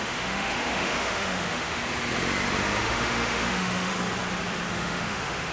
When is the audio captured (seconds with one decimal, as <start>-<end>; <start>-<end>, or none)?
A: 1.8-2.8; 3.9-4.7